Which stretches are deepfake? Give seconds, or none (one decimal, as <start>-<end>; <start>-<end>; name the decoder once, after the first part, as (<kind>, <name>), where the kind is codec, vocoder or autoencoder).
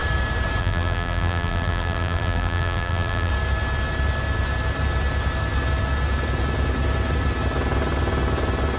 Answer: 0.6-3.3 (vocoder, BigVGAN v2)